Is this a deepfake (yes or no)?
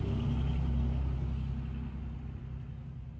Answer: no